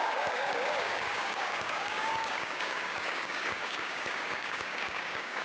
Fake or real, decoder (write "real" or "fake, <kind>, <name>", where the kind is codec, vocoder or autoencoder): fake, codec, DAC